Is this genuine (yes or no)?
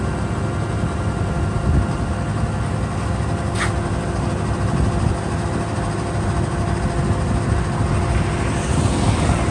yes